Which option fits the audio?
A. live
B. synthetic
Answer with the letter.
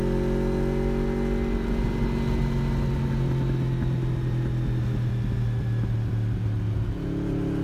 A